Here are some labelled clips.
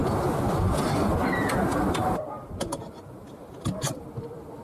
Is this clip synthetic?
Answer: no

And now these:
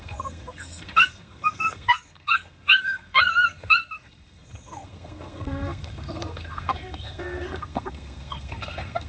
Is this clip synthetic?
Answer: yes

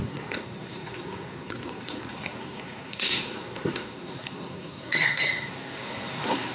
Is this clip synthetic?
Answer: yes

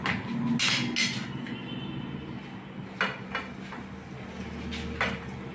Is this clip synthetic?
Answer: no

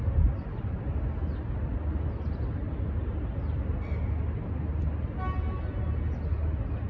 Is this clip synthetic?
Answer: no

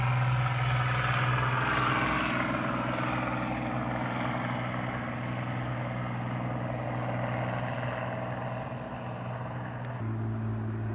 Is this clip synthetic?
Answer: no